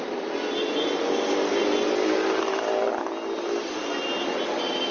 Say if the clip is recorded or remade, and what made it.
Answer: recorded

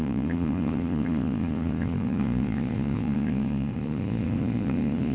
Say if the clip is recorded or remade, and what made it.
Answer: remade, vocoder, Vocos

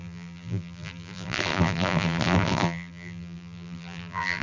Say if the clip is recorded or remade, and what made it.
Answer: remade, vocoder, BigVGAN v2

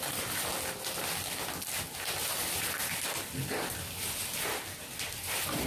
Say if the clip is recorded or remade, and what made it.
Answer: recorded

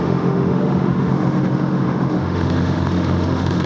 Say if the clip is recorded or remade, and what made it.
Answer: remade, autoencoder, DAC-VAE